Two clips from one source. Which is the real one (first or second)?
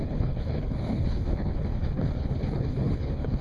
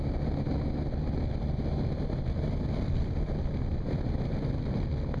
second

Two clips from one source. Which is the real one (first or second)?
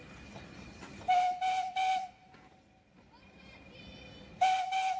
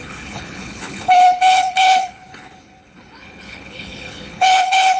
first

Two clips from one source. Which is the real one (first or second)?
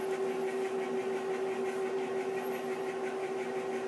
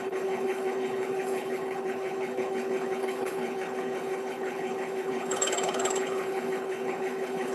first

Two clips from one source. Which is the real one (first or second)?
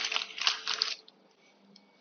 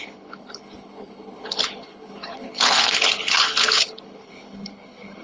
first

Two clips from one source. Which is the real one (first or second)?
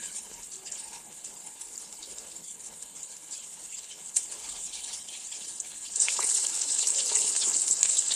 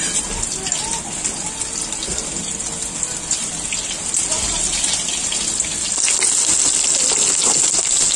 second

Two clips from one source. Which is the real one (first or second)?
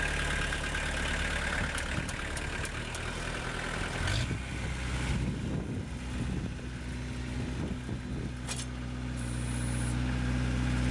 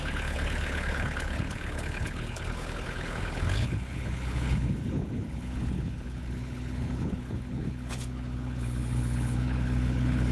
first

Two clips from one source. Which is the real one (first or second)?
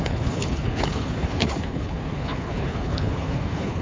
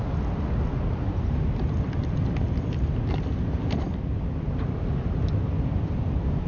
second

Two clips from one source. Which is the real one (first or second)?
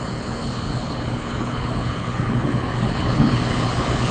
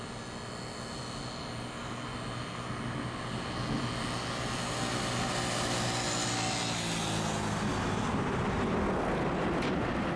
second